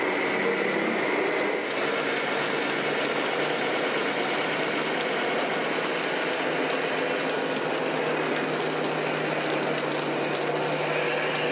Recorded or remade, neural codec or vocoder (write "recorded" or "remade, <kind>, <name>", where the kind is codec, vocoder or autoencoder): recorded